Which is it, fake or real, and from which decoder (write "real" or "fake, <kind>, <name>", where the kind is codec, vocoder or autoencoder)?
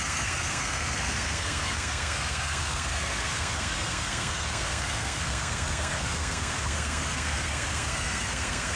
fake, codec, SNAC